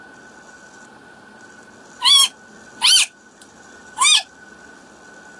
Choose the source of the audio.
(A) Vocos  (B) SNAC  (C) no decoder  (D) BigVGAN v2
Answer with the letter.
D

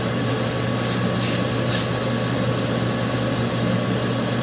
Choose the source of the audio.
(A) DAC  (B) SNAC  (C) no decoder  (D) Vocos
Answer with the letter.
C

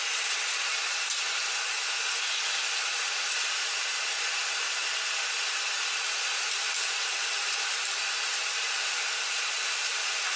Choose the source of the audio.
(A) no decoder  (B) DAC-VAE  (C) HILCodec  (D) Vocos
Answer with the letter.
A